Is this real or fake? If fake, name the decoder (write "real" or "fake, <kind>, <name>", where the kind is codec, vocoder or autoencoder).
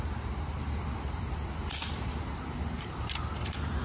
real